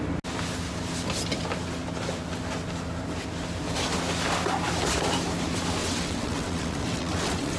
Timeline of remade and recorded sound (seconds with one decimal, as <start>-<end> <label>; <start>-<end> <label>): 0.0-5.8 recorded; 5.8-7.6 remade